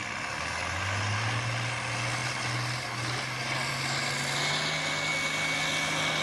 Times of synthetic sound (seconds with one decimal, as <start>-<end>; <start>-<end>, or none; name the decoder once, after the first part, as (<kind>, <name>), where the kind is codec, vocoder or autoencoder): none